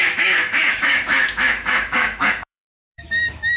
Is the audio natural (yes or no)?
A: no